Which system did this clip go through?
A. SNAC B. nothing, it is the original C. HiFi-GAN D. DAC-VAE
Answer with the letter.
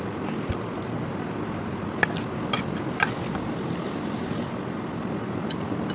B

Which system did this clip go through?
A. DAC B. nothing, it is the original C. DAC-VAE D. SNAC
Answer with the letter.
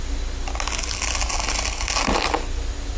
B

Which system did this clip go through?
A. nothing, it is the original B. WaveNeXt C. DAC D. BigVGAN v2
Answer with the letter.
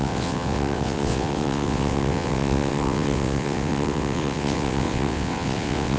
B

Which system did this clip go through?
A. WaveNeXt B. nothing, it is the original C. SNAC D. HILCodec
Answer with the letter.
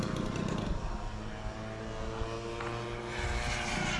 B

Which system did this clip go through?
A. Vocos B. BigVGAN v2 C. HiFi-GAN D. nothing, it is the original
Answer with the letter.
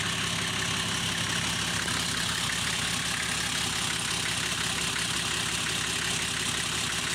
D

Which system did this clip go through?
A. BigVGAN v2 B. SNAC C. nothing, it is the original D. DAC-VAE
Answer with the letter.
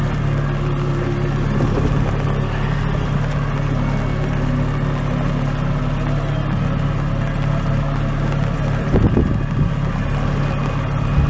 C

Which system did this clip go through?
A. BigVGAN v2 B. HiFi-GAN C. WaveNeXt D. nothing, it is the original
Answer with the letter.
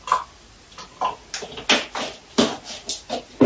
D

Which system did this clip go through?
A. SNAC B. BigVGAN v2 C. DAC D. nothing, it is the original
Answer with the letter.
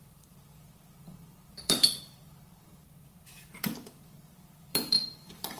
B